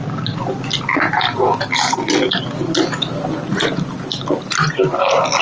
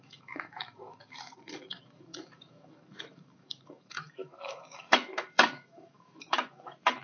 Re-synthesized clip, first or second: second